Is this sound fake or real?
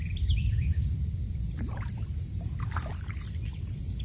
fake